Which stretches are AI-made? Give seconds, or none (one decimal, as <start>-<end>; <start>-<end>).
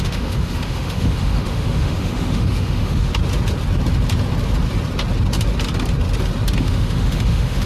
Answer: 0.0-3.1; 6.6-7.7